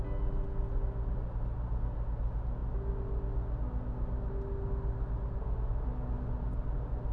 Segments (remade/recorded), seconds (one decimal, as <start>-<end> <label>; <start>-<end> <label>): 0.0-7.1 recorded